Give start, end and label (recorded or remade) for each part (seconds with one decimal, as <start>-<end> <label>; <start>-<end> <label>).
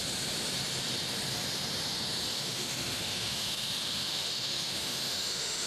0.0-2.3 recorded; 2.3-5.7 remade